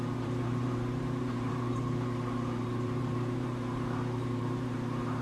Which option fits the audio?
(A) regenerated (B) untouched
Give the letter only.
A